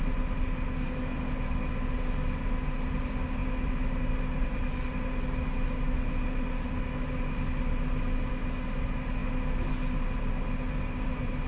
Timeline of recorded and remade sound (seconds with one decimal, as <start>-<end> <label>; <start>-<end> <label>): 0.0-11.5 recorded